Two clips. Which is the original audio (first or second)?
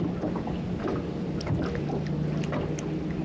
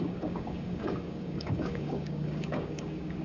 first